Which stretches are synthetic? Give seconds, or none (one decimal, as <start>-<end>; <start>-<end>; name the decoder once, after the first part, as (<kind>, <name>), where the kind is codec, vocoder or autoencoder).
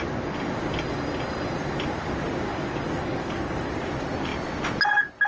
2.5-3.7 (codec, DAC)